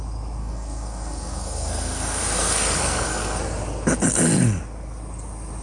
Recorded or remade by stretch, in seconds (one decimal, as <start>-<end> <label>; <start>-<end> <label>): 0.0-0.4 recorded; 0.4-3.4 remade; 3.4-5.6 recorded